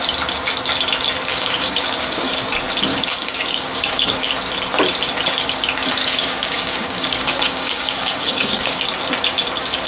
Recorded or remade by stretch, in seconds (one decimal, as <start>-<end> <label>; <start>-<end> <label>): 0.0-1.3 recorded; 1.3-2.3 remade; 2.3-2.9 recorded; 2.9-4.3 remade; 4.3-6.0 recorded; 6.0-8.8 remade; 8.8-9.9 recorded